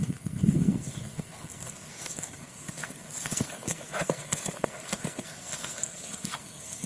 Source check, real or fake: fake